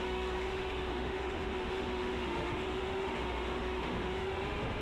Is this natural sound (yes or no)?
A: no